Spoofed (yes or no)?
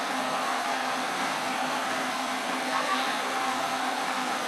yes